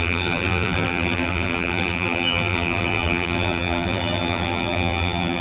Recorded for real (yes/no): no